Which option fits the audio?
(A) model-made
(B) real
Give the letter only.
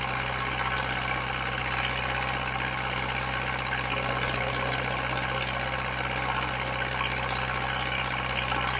B